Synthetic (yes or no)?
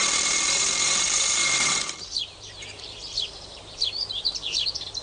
yes